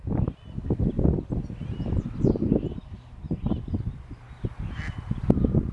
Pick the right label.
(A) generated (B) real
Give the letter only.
B